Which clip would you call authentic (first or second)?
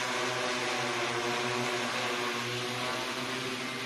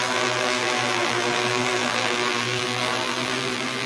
first